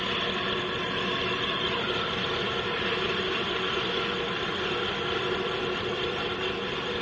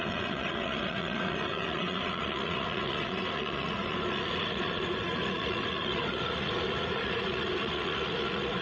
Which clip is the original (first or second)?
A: first